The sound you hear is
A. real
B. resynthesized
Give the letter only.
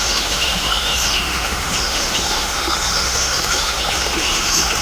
B